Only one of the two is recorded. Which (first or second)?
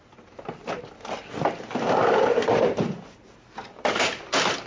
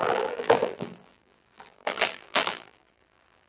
first